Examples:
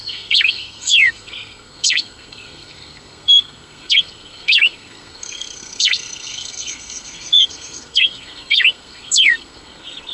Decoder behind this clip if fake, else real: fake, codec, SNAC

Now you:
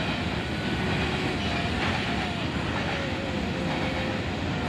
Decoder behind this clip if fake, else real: real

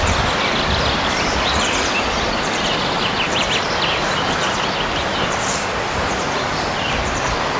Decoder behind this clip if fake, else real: real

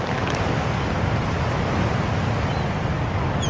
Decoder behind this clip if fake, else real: real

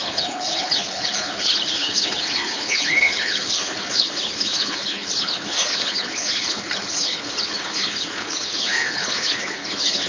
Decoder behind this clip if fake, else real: fake, codec, HILCodec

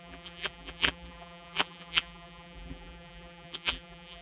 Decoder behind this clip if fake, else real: fake, vocoder, BigVGAN v2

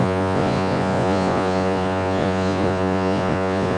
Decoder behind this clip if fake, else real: fake, vocoder, Vocos